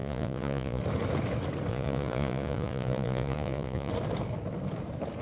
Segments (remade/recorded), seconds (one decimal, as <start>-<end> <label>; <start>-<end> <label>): 0.0-0.8 remade; 0.8-1.7 recorded; 1.7-3.9 remade; 3.9-5.2 recorded